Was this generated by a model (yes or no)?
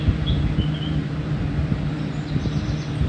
no